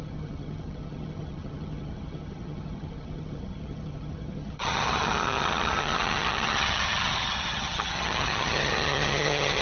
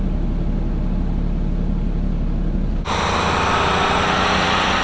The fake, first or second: first